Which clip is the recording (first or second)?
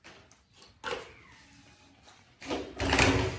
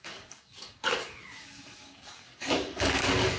first